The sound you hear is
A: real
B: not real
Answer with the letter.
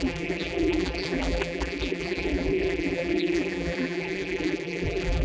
B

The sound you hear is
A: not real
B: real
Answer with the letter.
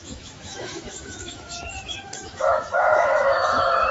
A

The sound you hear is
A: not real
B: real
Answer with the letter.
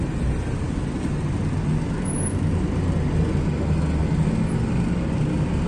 B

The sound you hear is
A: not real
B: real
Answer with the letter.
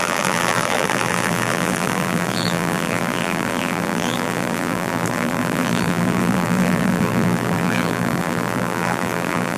A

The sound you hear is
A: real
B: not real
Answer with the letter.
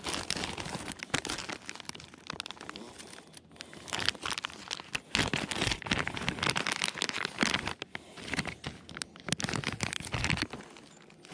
A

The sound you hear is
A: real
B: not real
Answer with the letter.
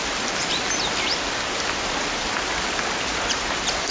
A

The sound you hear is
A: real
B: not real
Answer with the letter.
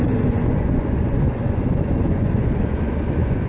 B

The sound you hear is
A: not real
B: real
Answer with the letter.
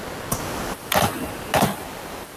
B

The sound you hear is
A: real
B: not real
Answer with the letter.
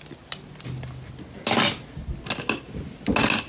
A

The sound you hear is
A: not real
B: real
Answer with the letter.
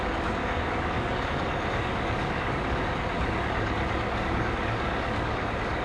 A